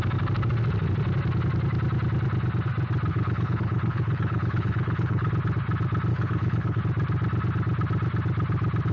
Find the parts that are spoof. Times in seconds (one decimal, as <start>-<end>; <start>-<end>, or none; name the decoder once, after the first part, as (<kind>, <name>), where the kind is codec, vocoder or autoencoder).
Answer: 3.1-5.3 (codec, HILCodec); 6.1-6.8